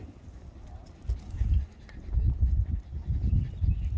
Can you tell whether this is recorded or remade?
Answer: recorded